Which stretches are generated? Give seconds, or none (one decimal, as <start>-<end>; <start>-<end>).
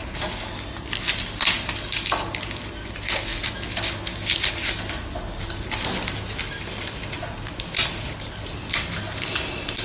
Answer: none